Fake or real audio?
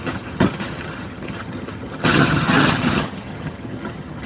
fake